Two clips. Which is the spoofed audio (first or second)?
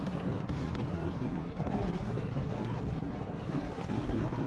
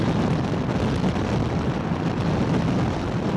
first